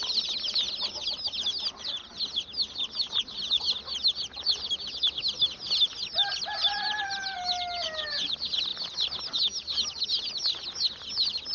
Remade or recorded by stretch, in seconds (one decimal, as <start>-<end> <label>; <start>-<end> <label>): 0.0-11.5 recorded